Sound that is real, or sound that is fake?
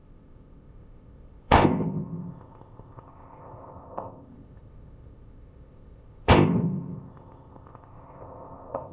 fake